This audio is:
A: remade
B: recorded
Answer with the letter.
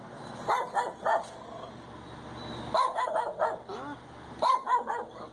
B